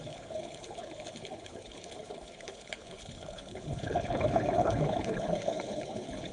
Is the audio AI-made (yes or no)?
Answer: yes